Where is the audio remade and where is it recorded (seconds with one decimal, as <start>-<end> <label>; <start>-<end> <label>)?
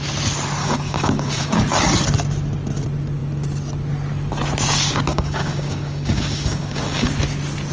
0.0-0.6 recorded; 0.6-1.6 remade; 1.6-5.1 recorded; 5.1-7.1 remade; 7.1-7.7 recorded